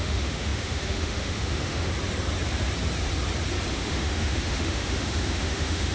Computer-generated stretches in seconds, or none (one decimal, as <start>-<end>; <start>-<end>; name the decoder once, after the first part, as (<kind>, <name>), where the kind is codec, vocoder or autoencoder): 0.0-1.9 (autoencoder, DAC-VAE); 3.7-5.9